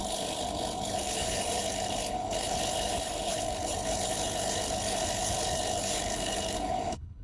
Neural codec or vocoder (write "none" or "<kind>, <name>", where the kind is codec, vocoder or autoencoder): codec, HILCodec